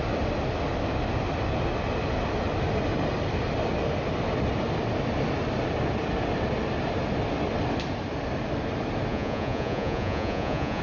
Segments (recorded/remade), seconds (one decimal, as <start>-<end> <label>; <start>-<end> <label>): 0.0-9.1 recorded; 9.1-10.8 remade